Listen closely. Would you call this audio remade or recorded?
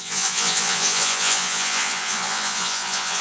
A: remade